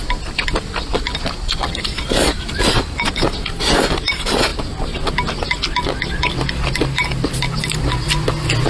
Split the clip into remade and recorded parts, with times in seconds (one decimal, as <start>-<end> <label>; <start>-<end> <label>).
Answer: 0.0-2.3 recorded; 2.3-3.1 remade; 3.1-4.5 recorded; 4.5-5.1 remade; 5.1-8.7 recorded